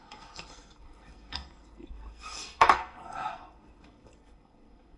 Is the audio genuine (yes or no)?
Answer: no